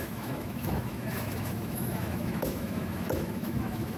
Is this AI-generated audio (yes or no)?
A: yes